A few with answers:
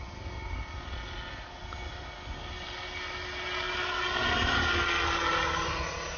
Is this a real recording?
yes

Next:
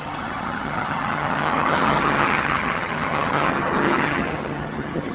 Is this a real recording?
no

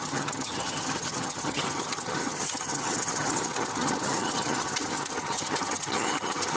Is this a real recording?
no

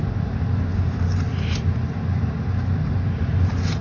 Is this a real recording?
yes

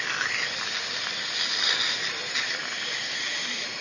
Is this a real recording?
yes